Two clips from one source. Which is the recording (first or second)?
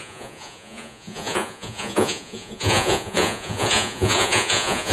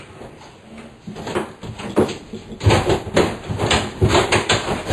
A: second